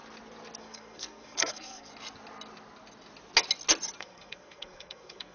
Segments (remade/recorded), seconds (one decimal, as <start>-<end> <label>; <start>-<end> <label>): 0.0-0.6 recorded; 0.6-1.9 remade; 1.9-4.0 recorded; 4.0-5.3 remade